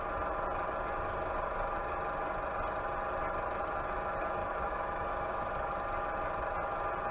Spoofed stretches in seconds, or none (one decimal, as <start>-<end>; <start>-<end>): 4.4-5.5